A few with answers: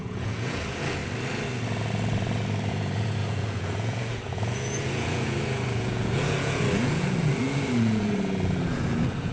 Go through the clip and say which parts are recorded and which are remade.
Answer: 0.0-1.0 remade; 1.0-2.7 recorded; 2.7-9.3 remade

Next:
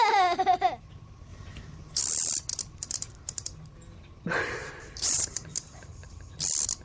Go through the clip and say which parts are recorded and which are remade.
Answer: 0.0-1.3 recorded; 1.3-2.0 remade; 2.0-4.6 recorded; 4.6-6.2 remade; 6.2-6.8 recorded

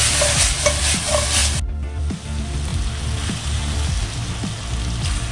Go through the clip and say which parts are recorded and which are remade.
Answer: 0.0-5.3 recorded

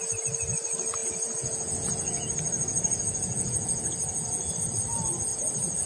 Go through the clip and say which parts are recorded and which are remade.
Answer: 0.0-1.0 recorded; 1.0-4.5 remade; 4.5-5.3 recorded; 5.3-5.9 remade